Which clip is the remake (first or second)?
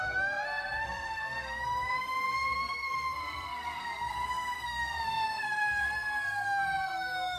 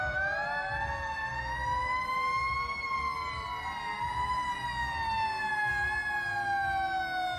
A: first